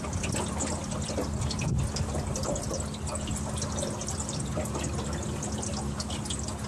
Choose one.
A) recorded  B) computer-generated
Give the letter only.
A